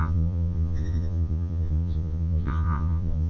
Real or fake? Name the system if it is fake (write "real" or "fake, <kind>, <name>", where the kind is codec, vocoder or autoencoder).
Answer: fake, vocoder, Vocos